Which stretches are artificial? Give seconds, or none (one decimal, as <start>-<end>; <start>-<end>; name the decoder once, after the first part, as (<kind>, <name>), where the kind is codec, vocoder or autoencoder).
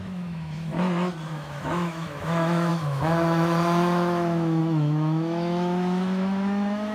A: 0.0-0.7 (autoencoder, DAC-VAE); 1.3-6.9